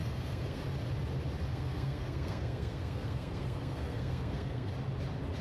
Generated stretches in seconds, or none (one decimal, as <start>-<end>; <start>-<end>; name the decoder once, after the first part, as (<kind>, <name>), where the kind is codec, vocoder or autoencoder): 0.0-0.6 (codec, SNAC); 1.5-4.7